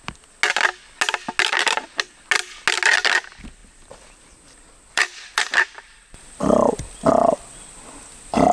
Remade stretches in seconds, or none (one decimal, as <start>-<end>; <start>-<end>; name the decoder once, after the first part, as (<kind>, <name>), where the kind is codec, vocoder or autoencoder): 3.6-6.9 (vocoder, BigVGAN v2)